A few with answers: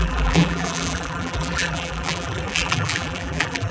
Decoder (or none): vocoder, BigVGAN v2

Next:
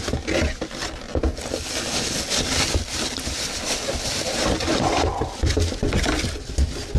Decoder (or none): none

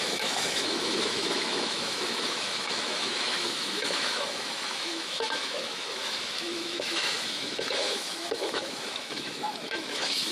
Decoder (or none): autoencoder, DAC-VAE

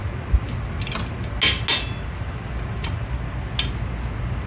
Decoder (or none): none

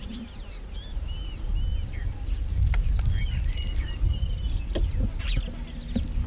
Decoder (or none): none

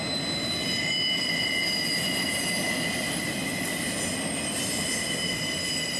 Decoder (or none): none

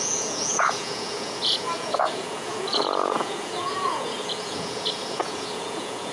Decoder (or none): vocoder, Vocos